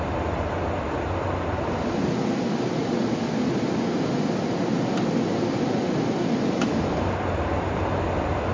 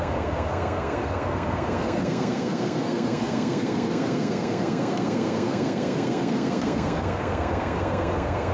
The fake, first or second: second